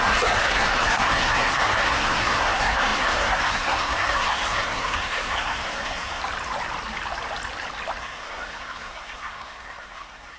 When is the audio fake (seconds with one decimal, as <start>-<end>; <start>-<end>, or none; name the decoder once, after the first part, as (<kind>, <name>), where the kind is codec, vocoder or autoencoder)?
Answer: 0.0-6.2 (codec, SNAC); 8.0-10.4